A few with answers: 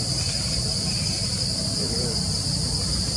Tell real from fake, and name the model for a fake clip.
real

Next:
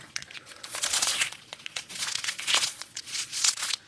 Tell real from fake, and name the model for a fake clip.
fake, vocoder, Vocos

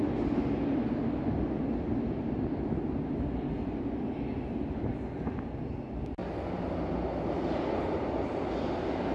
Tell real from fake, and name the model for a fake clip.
real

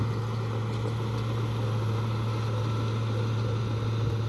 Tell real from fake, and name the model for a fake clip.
real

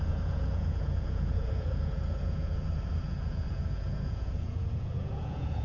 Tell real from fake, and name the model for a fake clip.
fake, vocoder, Vocos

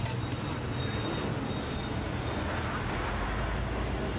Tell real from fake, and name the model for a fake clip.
real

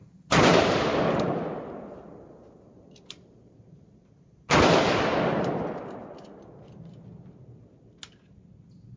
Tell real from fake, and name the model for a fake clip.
real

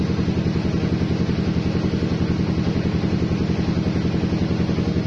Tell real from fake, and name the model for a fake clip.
real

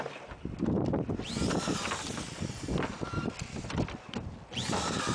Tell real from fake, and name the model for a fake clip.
real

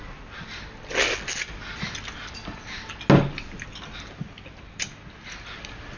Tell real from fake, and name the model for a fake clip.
real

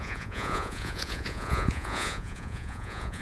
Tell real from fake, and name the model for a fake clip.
fake, vocoder, Vocos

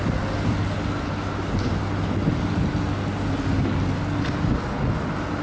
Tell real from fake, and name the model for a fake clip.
real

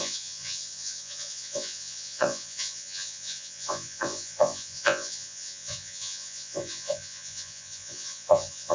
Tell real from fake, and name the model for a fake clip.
fake, vocoder, Vocos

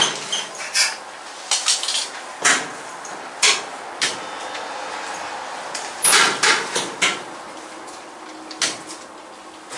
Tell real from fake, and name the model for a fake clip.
real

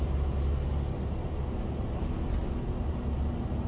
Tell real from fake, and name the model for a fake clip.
real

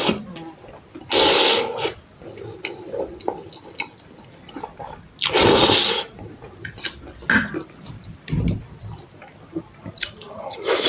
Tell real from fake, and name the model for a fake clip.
real